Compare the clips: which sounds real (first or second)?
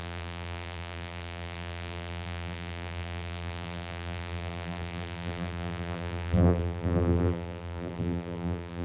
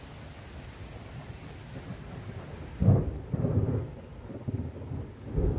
second